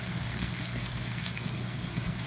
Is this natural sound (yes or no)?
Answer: no